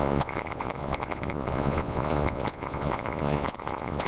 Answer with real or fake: fake